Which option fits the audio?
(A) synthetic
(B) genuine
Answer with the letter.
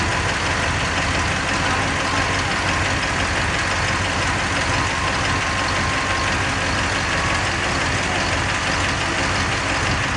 B